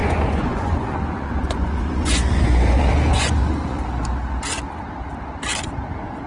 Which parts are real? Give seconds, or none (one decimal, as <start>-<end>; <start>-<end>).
3.8-6.3